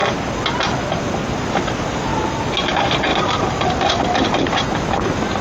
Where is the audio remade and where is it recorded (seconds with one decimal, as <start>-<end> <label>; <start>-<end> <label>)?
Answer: 0.0-3.1 recorded; 3.1-4.0 remade; 4.0-5.4 recorded